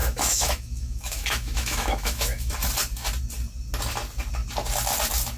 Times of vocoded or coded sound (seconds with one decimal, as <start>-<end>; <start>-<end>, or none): 0.0-2.5

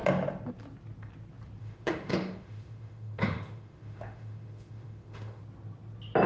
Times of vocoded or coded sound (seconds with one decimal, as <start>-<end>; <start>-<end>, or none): 1.6-5.4